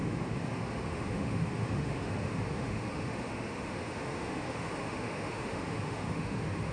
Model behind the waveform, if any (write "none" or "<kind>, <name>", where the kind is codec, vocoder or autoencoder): autoencoder, DAC-VAE